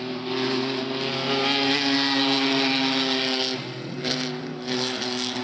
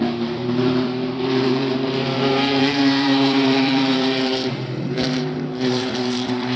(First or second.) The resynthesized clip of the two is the second